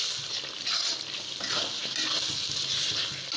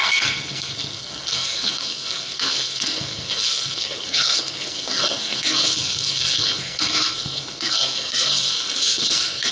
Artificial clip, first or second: second